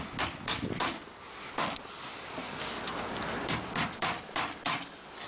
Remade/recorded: recorded